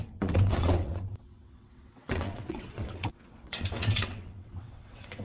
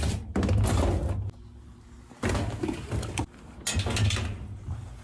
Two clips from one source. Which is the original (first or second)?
second